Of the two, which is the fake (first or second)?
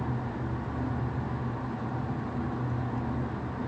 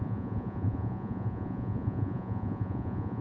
second